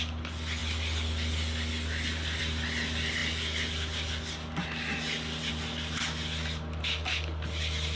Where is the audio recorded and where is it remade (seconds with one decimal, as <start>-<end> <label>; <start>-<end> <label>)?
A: 0.0-8.0 recorded